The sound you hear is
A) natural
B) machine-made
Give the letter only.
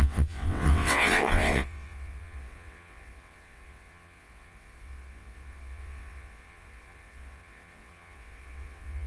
B